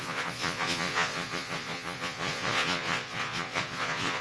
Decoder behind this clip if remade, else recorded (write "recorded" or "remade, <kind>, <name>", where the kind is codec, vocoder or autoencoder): remade, vocoder, Vocos